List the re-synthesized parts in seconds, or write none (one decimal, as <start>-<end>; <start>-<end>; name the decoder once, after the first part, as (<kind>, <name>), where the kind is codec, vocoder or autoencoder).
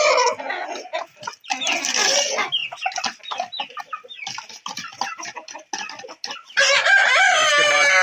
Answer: none